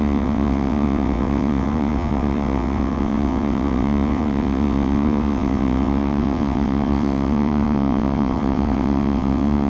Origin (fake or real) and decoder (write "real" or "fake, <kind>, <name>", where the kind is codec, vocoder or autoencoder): fake, vocoder, WaveNeXt